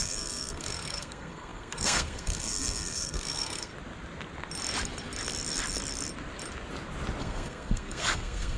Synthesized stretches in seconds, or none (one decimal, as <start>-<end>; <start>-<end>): 0.0-3.7; 7.2-8.6